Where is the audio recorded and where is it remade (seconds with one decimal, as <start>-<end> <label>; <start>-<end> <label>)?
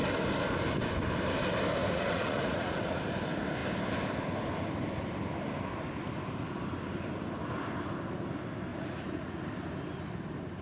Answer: 0.0-1.8 recorded; 1.8-3.0 remade; 3.0-8.7 recorded; 8.7-9.4 remade; 9.4-10.6 recorded